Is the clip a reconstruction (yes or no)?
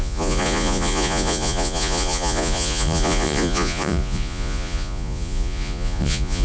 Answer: yes